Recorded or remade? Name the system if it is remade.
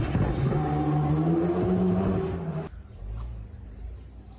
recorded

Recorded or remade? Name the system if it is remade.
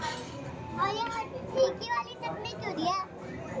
recorded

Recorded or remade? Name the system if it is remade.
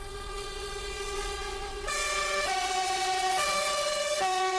remade, vocoder, WaveNeXt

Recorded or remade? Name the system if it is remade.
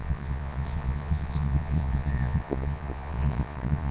remade, vocoder, Vocos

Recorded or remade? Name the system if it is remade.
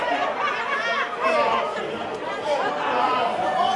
recorded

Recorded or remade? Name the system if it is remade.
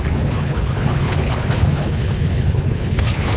remade, codec, HILCodec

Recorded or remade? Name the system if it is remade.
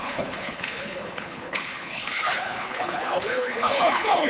remade, codec, HILCodec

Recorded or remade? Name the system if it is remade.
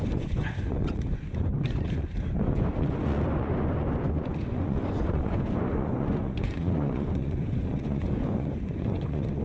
remade, vocoder, Vocos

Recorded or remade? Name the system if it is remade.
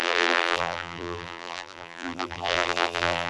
remade, vocoder, BigVGAN v2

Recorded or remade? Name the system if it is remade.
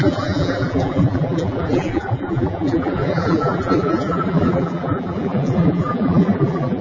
remade, vocoder, BigVGAN v2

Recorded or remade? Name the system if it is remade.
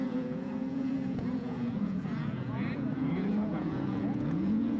remade, vocoder, Vocos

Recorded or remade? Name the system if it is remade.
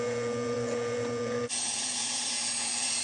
remade, vocoder, Vocos